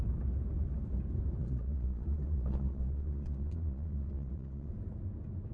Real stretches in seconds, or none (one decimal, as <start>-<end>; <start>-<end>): 0.0-1.4; 4.7-5.5